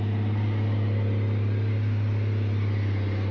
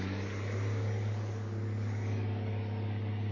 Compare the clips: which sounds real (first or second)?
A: first